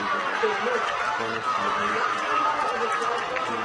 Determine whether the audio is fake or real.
real